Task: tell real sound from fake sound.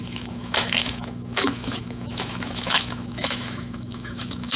fake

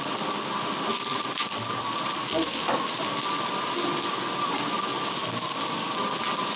real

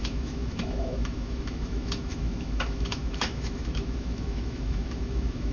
fake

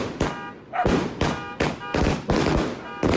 real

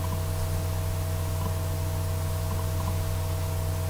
real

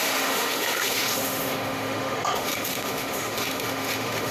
fake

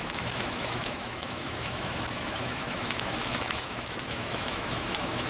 fake